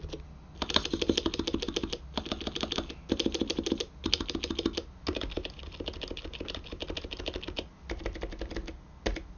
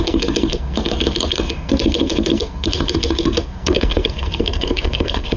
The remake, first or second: second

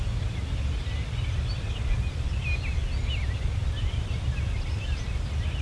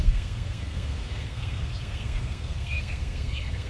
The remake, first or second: second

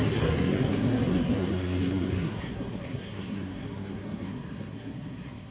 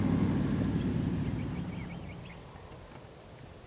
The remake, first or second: first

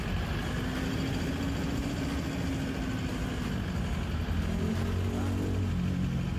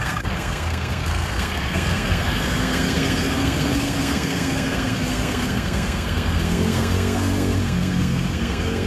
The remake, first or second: second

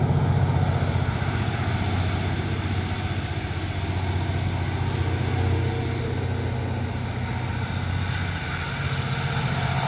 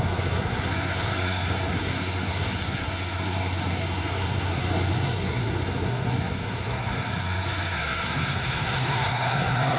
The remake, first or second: second